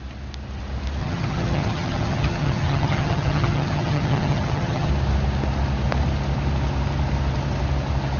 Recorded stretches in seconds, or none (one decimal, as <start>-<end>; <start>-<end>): 0.0-1.0; 4.9-8.2